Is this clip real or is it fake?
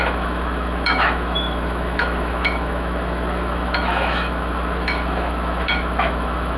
fake